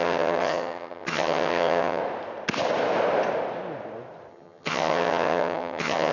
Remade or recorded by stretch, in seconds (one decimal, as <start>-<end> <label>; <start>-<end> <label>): 0.0-2.0 remade; 2.0-4.3 recorded; 4.3-6.1 remade